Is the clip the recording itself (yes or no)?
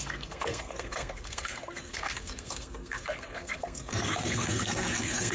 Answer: no